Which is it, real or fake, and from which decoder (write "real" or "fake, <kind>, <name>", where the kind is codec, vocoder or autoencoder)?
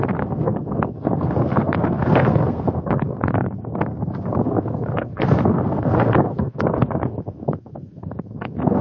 fake, codec, SNAC